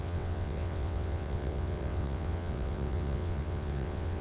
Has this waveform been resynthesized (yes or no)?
yes